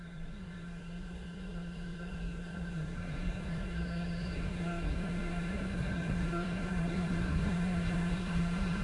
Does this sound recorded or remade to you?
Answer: remade